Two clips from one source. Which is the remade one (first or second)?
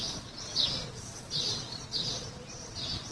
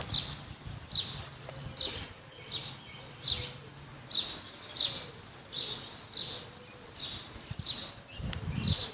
first